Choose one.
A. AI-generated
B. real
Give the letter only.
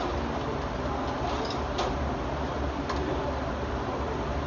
B